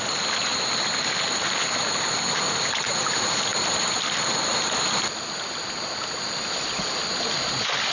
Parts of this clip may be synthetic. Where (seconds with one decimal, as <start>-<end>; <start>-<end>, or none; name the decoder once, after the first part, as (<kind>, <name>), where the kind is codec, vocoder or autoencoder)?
none